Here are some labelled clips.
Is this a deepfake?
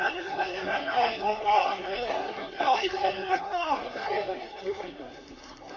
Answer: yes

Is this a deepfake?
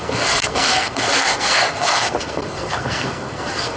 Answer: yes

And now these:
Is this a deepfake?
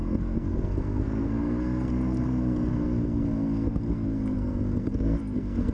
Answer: yes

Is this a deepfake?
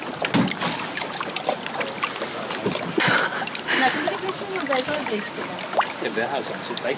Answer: no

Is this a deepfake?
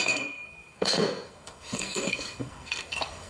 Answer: yes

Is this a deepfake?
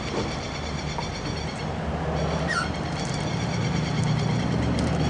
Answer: no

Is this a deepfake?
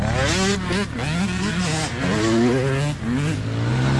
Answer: no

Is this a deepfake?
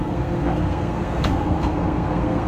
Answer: yes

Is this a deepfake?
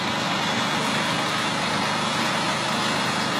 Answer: no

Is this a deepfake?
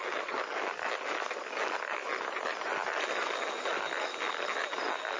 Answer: no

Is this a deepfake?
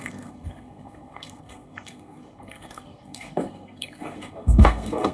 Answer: yes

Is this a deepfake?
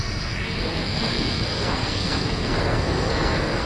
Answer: yes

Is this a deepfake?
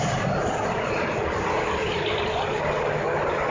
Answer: no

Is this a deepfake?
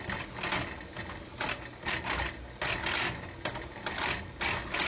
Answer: no